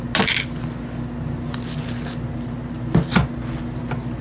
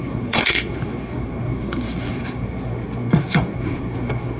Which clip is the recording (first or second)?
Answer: first